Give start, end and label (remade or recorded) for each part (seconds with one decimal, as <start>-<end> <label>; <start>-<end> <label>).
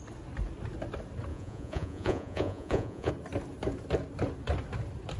0.0-1.3 recorded; 1.3-3.1 remade; 3.1-5.2 recorded